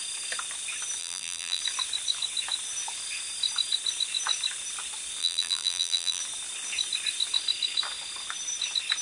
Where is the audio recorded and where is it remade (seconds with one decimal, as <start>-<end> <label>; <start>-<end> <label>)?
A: 0.0-1.0 recorded; 1.0-1.6 remade; 1.6-5.2 recorded; 5.2-6.2 remade; 6.2-9.0 recorded